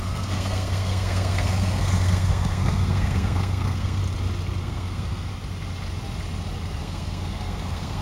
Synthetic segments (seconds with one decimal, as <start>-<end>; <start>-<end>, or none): 0.0-4.0; 4.6-5.3; 6.8-8.0